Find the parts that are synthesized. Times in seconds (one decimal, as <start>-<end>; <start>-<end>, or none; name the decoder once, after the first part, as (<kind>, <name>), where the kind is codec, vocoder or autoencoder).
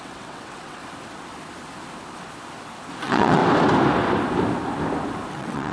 0.0-0.8 (vocoder, WaveNeXt); 3.0-3.4; 5.3-5.7